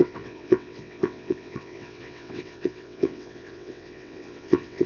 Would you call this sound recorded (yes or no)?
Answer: no